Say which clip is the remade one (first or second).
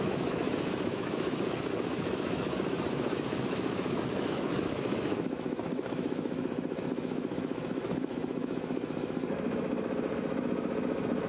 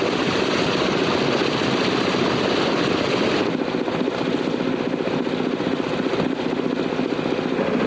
first